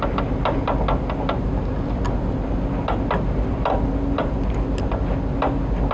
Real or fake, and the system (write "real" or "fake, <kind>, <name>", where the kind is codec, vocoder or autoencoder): real